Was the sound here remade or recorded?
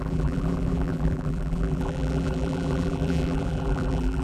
remade